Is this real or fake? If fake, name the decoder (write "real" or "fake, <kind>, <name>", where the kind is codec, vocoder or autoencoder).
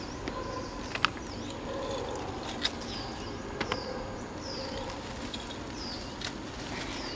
real